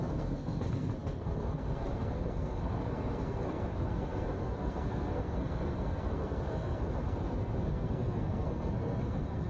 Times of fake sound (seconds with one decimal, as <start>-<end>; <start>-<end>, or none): 0.0-9.5